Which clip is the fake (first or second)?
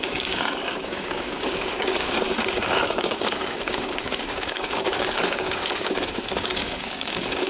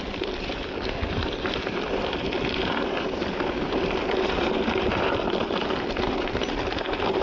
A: first